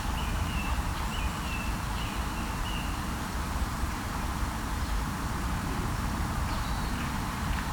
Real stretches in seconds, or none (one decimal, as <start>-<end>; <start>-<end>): 0.9-2.6